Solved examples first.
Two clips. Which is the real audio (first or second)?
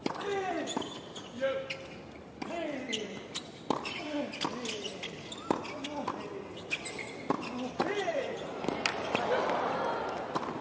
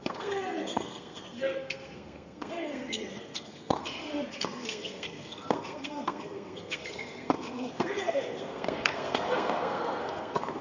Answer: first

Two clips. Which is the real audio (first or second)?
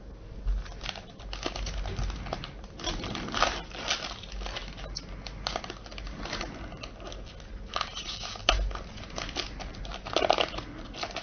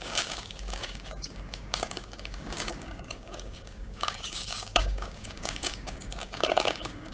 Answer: first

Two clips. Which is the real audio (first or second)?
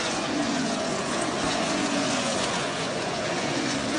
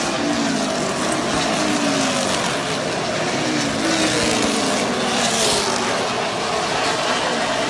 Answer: second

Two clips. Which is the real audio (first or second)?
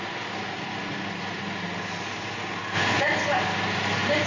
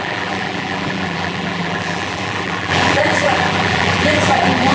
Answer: first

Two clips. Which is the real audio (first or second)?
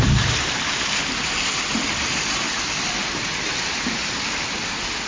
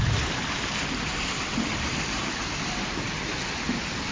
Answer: first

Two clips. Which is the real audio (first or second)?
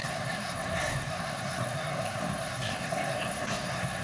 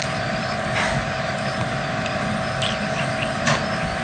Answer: second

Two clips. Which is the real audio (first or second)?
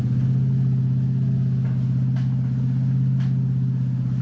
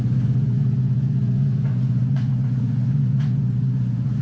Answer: first